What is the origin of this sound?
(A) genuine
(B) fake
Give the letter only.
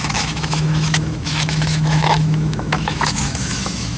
B